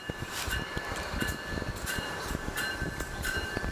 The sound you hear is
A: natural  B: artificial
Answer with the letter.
B